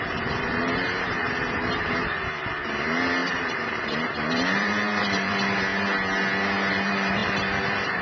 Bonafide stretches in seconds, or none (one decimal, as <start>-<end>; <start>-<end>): 5.7-6.7